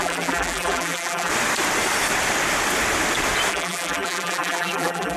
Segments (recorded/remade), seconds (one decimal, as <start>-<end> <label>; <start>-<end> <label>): 0.0-1.3 remade; 1.3-3.5 recorded; 3.5-5.2 remade